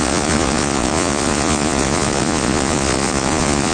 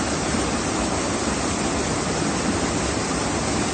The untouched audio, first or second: second